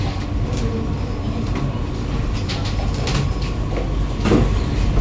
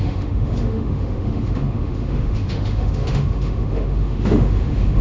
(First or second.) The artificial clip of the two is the second